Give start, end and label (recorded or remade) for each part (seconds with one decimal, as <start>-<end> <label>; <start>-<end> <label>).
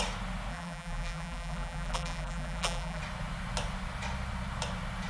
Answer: 0.0-0.5 recorded; 0.5-3.0 remade; 3.0-5.1 recorded